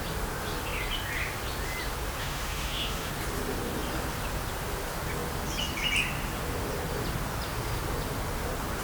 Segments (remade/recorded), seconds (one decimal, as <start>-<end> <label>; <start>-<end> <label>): 0.0-2.2 recorded; 2.2-3.1 remade; 3.1-8.8 recorded